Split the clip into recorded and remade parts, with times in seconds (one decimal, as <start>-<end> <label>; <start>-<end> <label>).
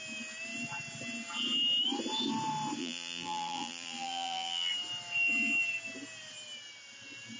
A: 0.0-2.8 recorded; 2.8-4.7 remade; 4.7-7.4 recorded